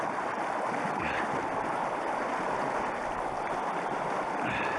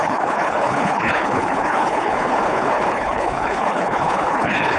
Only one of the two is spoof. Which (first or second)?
second